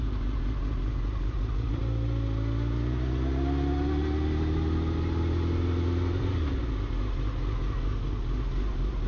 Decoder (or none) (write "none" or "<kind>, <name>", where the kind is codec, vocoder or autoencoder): none